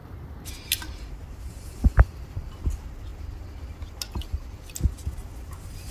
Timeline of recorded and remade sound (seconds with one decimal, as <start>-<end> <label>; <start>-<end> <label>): 0.0-1.2 recorded; 1.2-2.6 remade; 2.6-5.9 recorded